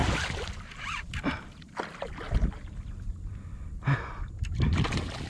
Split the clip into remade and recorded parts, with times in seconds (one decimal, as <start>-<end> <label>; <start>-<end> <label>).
0.0-5.3 recorded